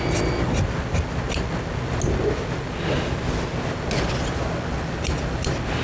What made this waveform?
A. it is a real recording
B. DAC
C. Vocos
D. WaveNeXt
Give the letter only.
A